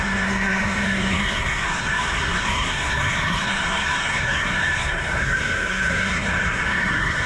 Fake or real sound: fake